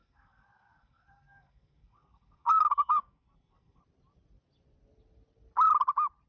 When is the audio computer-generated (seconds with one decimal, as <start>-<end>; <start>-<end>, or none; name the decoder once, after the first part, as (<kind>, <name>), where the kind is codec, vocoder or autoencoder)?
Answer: 0.0-3.8 (codec, SNAC)